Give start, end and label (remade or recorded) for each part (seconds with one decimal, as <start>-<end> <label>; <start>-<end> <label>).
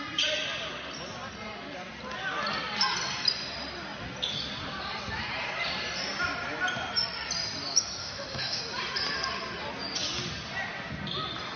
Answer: 0.0-8.0 recorded; 8.0-8.6 remade; 8.6-11.6 recorded